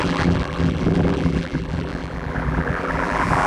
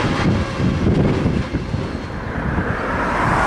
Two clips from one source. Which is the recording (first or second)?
second